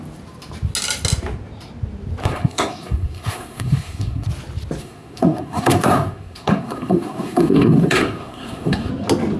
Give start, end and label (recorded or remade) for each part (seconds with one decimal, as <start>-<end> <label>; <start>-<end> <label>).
0.0-2.2 recorded; 2.2-4.3 remade; 4.3-4.8 recorded; 4.8-8.9 remade; 8.9-9.4 recorded